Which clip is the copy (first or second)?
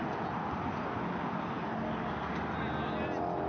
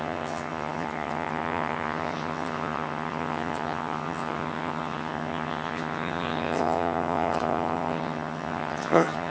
second